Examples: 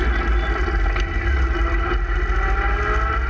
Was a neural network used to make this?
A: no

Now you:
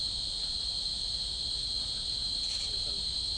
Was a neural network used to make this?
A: yes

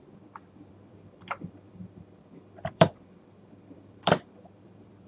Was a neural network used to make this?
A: yes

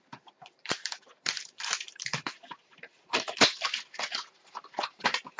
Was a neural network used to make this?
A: yes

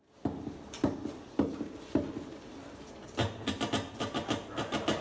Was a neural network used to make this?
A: no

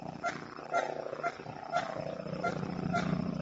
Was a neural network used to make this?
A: no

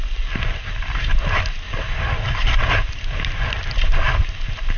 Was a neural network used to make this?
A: yes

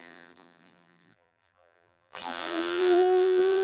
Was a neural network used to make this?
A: yes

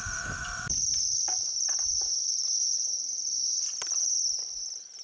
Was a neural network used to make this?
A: yes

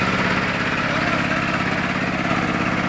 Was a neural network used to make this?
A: no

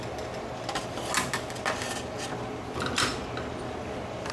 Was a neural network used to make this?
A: no